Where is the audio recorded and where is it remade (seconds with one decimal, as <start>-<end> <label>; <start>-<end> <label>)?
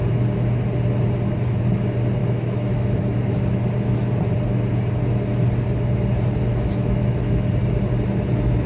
0.0-2.2 recorded; 2.2-3.0 remade; 3.0-6.5 recorded; 6.5-7.5 remade; 7.5-8.7 recorded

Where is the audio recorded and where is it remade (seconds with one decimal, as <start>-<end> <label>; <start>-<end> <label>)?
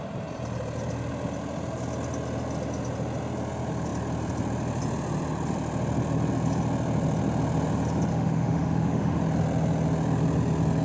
0.0-8.1 recorded; 8.1-9.2 remade; 9.2-10.8 recorded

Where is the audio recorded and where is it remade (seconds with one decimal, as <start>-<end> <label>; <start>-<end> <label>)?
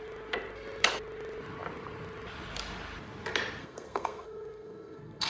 0.0-3.6 recorded; 3.6-5.3 remade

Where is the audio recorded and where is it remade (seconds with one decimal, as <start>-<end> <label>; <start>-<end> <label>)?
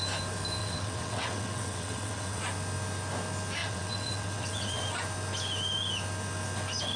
0.0-0.6 recorded; 0.6-2.4 remade; 2.4-3.6 recorded; 3.6-4.8 remade; 4.8-7.0 recorded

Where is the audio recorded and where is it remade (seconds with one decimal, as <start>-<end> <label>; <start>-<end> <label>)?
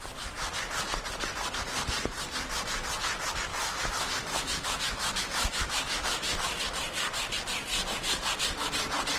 0.0-3.5 recorded; 3.5-6.6 remade; 6.6-9.2 recorded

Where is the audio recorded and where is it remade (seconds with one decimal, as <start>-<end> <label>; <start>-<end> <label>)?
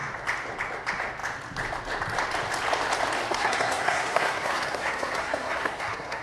0.0-3.3 recorded; 3.3-6.2 remade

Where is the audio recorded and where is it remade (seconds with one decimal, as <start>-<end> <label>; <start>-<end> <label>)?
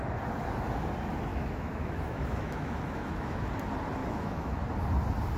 0.0-1.3 recorded; 1.3-3.5 remade; 3.5-4.0 recorded; 4.0-4.6 remade; 4.6-5.4 recorded